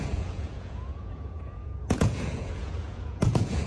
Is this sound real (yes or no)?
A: no